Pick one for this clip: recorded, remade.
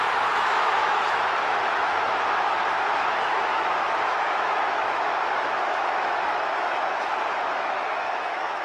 remade